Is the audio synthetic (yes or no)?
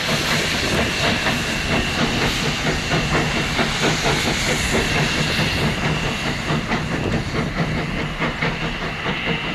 no